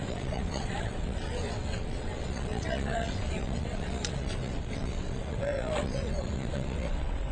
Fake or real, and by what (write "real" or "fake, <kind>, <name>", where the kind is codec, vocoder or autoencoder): fake, vocoder, WaveNeXt